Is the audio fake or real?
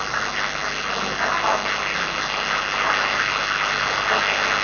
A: fake